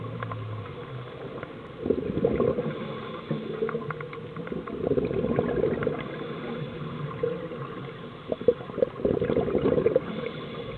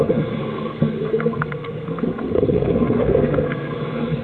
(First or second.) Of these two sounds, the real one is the first